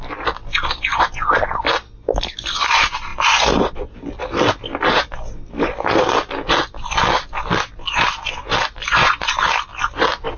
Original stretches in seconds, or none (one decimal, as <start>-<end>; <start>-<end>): 0.0-10.4